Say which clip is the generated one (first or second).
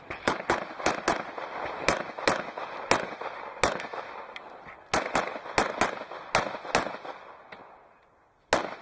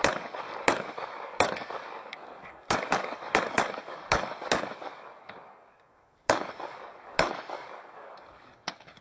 second